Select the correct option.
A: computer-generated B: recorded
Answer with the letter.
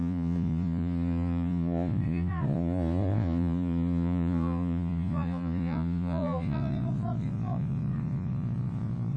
A